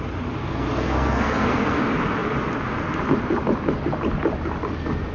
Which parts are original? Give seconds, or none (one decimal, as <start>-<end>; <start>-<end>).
0.0-0.4; 1.8-5.1